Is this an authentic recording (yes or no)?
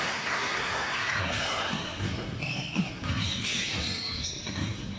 no